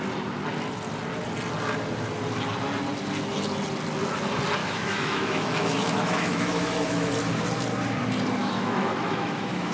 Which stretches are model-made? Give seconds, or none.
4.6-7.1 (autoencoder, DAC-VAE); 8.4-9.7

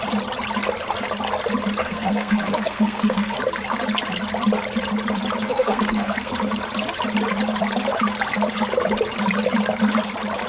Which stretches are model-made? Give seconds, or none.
1.8-3.4 (codec, SNAC); 5.4-6.3

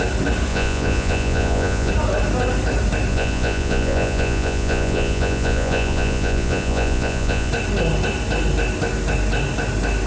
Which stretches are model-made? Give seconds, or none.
0.5-1.9 (vocoder, Vocos); 3.1-7.5

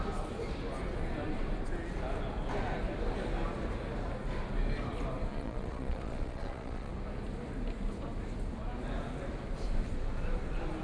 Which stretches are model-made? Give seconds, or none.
5.3-6.9 (vocoder, Vocos)

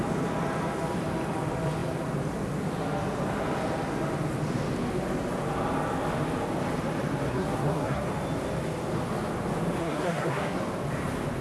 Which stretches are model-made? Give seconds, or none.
7.3-8.1 (codec, SNAC); 9.8-10.6